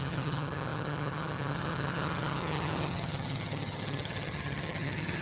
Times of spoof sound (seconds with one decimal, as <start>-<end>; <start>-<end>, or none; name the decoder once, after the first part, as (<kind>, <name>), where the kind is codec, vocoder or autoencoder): 0.0-5.2 (vocoder, HiFi-GAN)